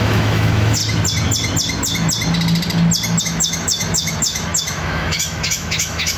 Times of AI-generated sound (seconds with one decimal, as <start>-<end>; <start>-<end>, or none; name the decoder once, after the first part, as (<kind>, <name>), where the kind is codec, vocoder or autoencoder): 0.0-0.8 (autoencoder, DAC-VAE); 3.2-6.2

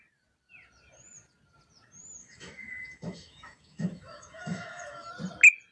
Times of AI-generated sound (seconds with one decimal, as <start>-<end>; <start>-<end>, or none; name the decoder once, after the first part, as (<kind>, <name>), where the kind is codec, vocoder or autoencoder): 2.2-5.1 (autoencoder, DAC-VAE)

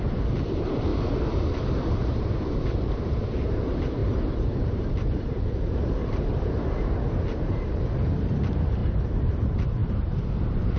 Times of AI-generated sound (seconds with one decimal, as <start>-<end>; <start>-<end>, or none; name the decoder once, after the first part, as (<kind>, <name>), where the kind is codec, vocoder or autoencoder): 0.0-0.9 (vocoder, BigVGAN v2); 2.0-10.8

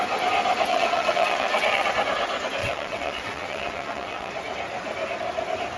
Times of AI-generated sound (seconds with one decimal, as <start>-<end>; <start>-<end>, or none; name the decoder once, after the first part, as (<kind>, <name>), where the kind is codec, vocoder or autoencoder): 0.7-1.9 (vocoder, WaveNeXt); 2.6-4.3

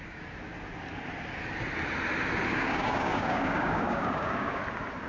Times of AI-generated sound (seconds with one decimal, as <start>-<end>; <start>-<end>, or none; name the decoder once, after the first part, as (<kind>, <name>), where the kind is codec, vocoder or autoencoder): 2.5-4.6 (codec, DAC)

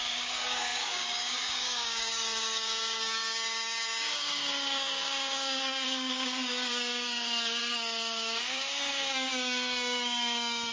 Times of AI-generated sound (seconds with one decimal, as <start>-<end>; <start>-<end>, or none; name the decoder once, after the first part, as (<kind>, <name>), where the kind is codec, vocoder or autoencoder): 0.0-10.7 (codec, DAC)

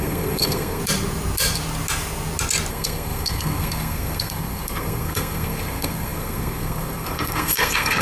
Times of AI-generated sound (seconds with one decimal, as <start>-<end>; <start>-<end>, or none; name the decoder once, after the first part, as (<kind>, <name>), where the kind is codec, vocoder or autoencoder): 0.0-0.8 (codec, SNAC); 2.7-8.0